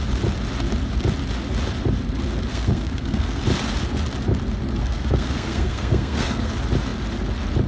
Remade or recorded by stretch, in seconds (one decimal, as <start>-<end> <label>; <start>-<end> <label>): 0.0-2.5 recorded; 2.5-3.4 remade; 3.4-4.8 recorded; 4.8-6.5 remade; 6.5-7.7 recorded